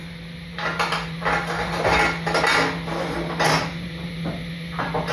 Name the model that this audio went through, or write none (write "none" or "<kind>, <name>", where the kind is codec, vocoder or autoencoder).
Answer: none